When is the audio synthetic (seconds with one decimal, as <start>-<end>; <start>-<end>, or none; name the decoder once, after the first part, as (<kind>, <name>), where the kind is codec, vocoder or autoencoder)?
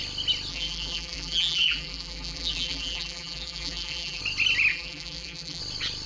0.5-4.2 (vocoder, BigVGAN v2); 4.7-5.6